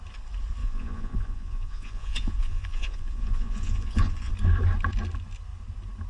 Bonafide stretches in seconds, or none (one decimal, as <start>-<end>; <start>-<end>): 0.0-0.6; 4.3-6.1